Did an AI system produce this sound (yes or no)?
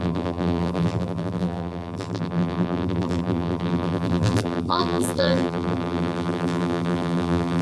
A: yes